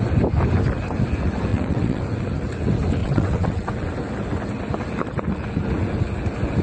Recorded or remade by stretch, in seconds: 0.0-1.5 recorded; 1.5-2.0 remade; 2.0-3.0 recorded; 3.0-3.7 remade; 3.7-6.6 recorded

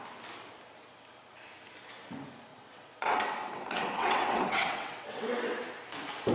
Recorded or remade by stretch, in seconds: 0.0-2.5 recorded; 2.5-5.6 remade; 5.6-6.3 recorded